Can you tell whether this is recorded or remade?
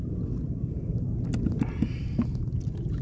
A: recorded